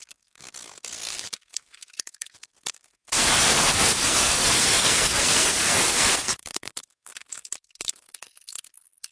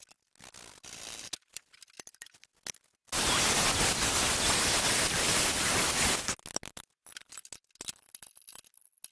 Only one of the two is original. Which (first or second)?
second